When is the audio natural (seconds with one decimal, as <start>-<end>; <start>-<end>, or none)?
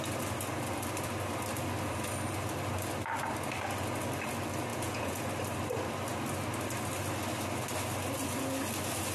0.0-4.7; 5.2-9.1